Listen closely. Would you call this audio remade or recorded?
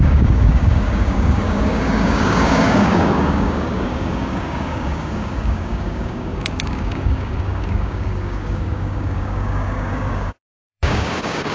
remade